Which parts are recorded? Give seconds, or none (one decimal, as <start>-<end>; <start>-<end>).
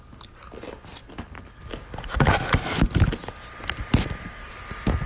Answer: 0.0-5.1